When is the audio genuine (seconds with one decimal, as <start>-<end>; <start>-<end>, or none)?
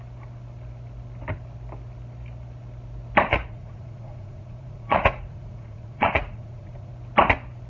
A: 0.0-3.3; 6.9-7.7